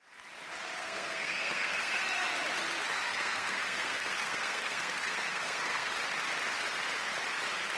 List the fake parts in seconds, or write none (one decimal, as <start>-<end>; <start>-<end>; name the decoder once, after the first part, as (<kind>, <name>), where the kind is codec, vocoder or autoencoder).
0.8-2.0 (codec, SNAC); 3.1-5.9